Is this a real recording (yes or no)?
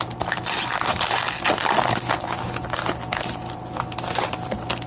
yes